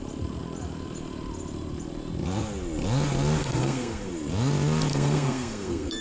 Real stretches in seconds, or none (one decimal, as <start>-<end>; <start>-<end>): 0.0-3.4; 4.1-4.9